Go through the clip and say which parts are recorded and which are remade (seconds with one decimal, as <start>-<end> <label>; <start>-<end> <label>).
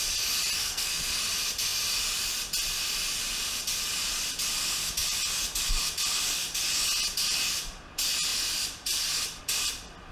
0.0-0.6 recorded; 0.6-1.2 remade; 1.2-10.1 recorded